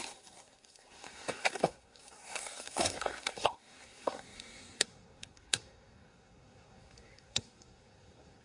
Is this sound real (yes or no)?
no